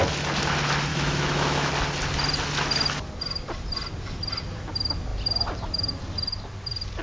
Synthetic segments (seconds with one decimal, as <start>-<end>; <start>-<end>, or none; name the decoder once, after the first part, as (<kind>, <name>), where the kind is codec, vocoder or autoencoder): 0.9-1.7 (autoencoder, DAC-VAE)